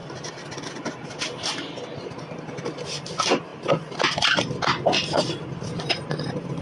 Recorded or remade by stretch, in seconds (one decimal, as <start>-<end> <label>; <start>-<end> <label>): 0.0-6.6 recorded